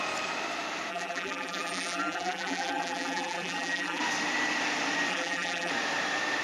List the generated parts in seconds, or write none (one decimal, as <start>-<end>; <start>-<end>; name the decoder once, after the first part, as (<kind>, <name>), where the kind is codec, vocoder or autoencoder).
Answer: 0.9-4.0 (vocoder, BigVGAN v2); 5.1-5.7